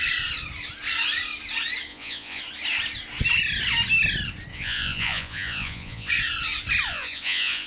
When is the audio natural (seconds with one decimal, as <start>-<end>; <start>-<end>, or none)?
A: 0.0-1.9; 2.4-4.5; 6.1-6.9